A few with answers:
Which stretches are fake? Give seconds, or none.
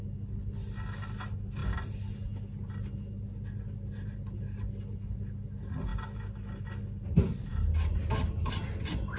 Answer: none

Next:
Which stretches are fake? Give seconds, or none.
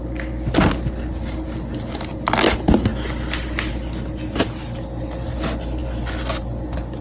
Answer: none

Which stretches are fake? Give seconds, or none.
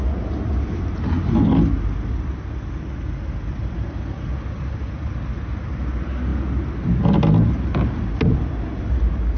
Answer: none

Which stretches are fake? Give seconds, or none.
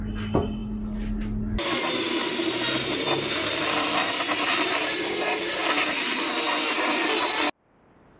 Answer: none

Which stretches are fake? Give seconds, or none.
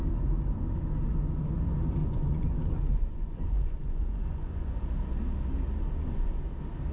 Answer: 2.0-4.8 (vocoder, Vocos)